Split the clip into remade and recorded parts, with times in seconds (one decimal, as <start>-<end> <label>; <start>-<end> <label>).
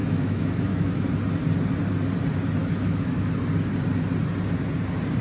0.0-1.1 remade; 1.1-2.6 recorded; 2.6-3.3 remade; 3.3-5.2 recorded